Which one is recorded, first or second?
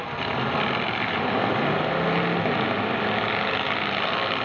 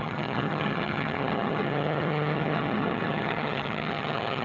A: first